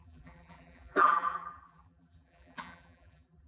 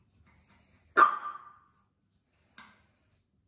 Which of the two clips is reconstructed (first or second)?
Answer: first